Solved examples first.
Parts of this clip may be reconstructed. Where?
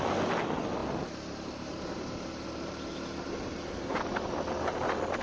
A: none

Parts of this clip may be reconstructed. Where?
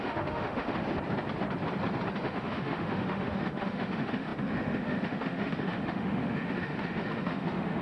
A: 0.0-0.8 (autoencoder, DAC-VAE); 2.2-7.8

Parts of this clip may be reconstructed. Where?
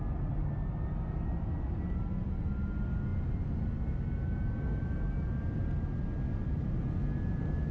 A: none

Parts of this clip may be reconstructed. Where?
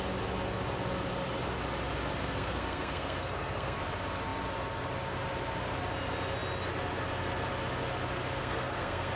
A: 2.2-3.8 (codec, SNAC); 8.4-9.2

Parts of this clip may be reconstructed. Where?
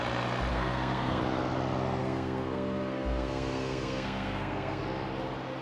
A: 0.5-1.2 (codec, SNAC); 2.0-4.8